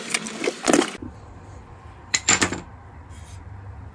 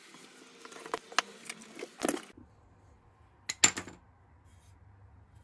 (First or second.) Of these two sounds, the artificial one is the first